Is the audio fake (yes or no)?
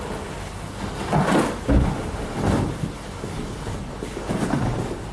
no